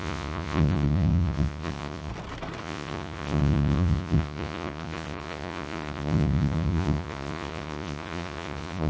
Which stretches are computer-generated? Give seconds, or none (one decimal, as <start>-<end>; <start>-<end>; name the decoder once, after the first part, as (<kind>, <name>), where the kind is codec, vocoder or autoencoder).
0.0-2.1 (vocoder, Vocos); 2.6-8.9